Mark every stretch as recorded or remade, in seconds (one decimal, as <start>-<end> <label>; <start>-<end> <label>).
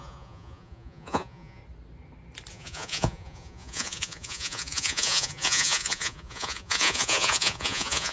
0.0-1.6 remade; 1.6-2.5 recorded; 2.5-8.1 remade